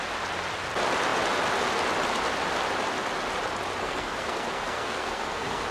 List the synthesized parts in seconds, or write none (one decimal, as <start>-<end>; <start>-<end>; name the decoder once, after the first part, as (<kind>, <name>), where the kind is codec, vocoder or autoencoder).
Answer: 3.8-5.7 (codec, SNAC)